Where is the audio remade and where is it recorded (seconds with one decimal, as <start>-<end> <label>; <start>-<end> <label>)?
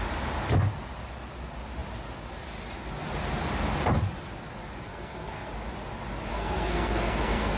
0.0-4.9 recorded; 4.9-5.5 remade; 5.5-6.3 recorded; 6.3-7.6 remade